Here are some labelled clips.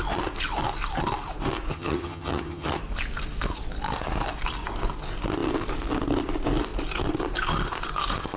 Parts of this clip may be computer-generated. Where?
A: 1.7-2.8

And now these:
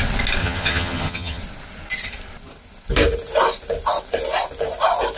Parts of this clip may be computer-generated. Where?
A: 0.4-1.4

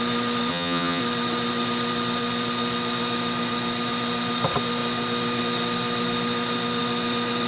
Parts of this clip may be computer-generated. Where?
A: 0.5-1.0

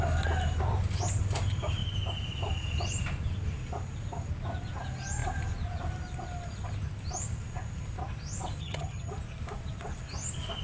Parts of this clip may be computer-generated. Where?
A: 8.6-9.1

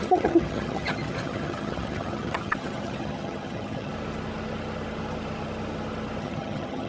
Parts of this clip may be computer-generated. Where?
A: 0.0-3.9; 6.2-6.9

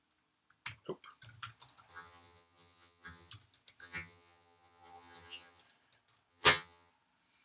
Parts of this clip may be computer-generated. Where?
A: 1.9-3.3; 3.8-5.6; 6.3-6.9

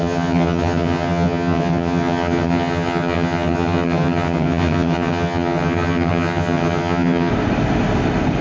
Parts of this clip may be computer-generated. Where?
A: 0.0-7.3

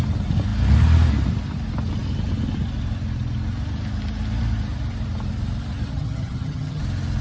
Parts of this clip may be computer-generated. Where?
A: 5.9-6.8